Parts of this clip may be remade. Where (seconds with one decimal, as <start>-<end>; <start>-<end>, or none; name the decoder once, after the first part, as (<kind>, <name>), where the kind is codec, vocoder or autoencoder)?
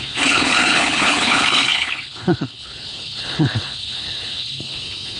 0.0-5.2 (codec, HILCodec)